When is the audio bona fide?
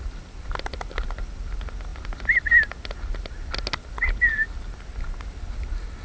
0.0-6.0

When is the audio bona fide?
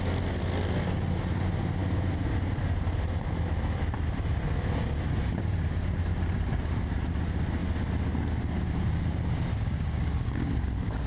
0.0-9.5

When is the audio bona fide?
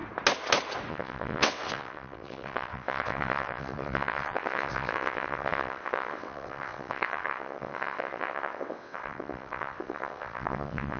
0.0-0.9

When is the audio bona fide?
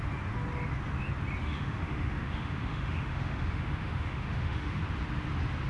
0.0-1.4; 4.8-5.7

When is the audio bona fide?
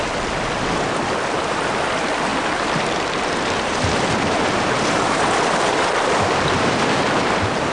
0.0-7.7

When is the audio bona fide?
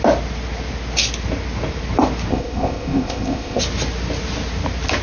0.0-2.3; 3.6-5.0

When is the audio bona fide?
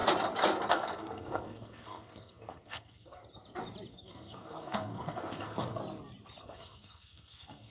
0.0-0.7; 3.2-3.9; 5.8-6.4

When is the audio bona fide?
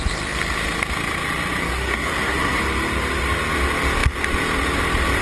0.0-1.6; 2.6-5.2